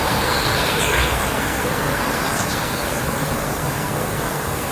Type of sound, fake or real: fake